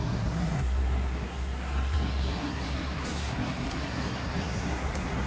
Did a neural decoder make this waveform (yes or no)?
yes